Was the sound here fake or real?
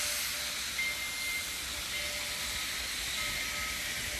real